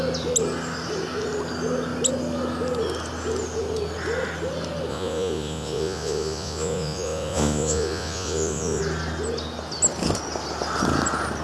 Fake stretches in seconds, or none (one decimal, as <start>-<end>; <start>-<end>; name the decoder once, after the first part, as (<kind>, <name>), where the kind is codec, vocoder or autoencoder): 4.9-8.8 (vocoder, Vocos)